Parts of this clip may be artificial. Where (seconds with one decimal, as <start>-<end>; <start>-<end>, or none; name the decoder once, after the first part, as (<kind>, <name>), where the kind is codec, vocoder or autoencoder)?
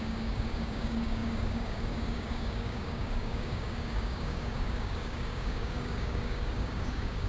0.0-7.3 (codec, DAC)